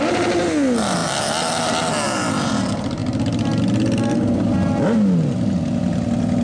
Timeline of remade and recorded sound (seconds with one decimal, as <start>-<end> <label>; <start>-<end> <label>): 0.0-6.4 recorded